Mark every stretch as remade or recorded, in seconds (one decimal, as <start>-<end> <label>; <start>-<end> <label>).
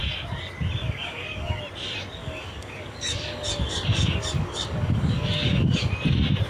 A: 0.0-0.8 recorded; 0.8-1.6 remade; 1.6-2.2 recorded; 2.2-5.9 remade; 5.9-6.5 recorded